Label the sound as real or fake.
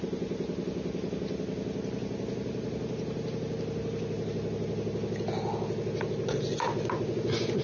real